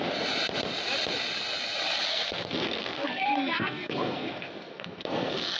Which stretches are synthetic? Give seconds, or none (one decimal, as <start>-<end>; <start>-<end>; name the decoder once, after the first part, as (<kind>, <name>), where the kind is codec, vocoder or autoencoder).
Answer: 2.1-5.6 (codec, SNAC)